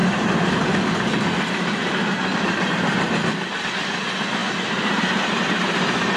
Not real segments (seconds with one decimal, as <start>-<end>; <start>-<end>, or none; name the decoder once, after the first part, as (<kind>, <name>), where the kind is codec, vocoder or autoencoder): 0.0-3.7 (vocoder, BigVGAN v2)